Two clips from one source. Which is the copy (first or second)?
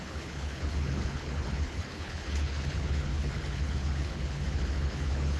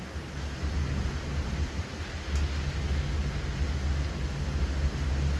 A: first